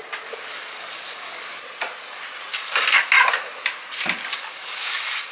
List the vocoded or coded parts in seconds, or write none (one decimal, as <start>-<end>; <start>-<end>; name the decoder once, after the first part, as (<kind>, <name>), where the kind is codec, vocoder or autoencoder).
0.5-1.4 (codec, DAC); 2.5-3.1; 4.3-5.3